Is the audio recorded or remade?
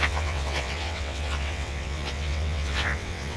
remade